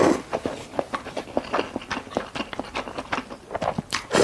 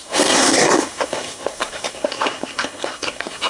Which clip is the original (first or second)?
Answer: first